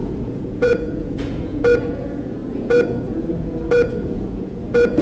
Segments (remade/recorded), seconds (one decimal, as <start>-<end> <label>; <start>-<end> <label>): 0.0-5.0 remade